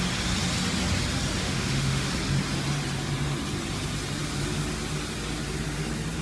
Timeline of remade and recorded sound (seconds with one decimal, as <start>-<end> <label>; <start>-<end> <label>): 0.0-1.4 recorded; 1.4-2.1 remade; 2.1-6.2 recorded